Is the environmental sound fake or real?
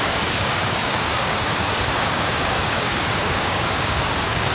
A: fake